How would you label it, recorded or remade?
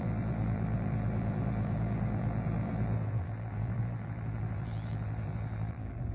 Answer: remade